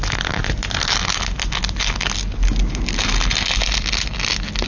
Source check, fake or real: real